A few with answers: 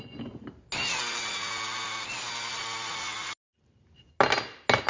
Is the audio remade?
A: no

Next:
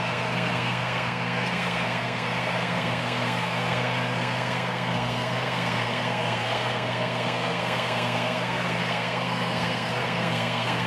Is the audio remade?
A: yes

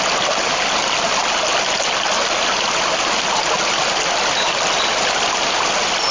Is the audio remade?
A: no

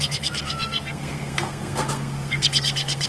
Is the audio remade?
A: yes